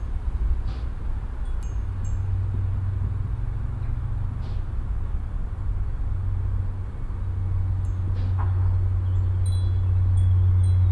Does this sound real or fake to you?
real